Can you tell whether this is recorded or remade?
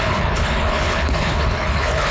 remade